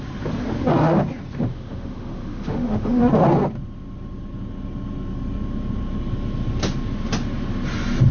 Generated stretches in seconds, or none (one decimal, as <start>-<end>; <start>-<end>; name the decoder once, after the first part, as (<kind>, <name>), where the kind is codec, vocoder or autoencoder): 1.5-3.0 (autoencoder, DAC-VAE)